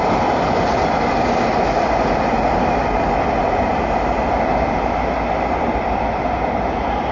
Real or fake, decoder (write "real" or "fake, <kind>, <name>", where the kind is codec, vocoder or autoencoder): real